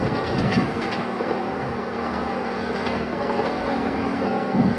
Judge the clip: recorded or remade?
remade